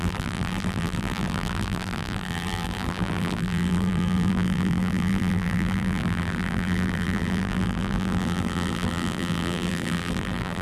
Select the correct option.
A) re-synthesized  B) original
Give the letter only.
A